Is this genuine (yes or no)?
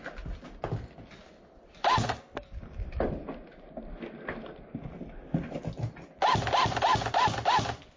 yes